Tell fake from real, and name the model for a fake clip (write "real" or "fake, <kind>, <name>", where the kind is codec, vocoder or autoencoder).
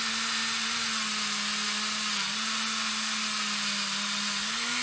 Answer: real